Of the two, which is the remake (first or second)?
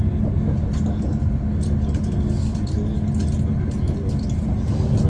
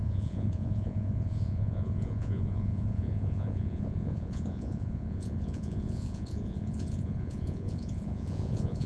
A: second